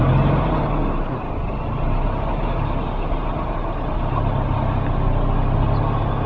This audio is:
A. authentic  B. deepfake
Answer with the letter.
A